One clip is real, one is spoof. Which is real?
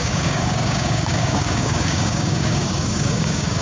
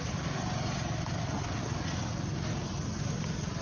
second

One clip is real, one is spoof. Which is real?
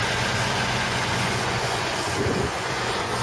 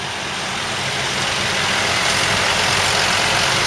second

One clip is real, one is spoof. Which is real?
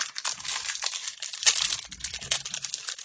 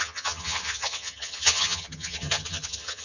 first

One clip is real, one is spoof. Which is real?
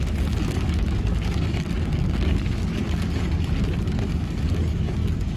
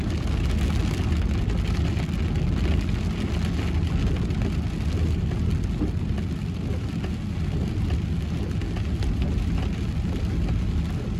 second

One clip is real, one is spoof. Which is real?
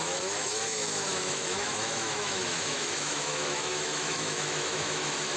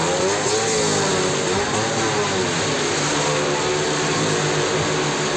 second